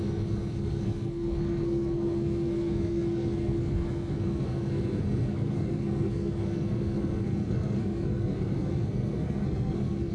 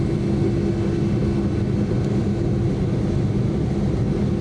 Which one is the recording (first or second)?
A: second